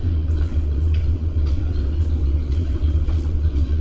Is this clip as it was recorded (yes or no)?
no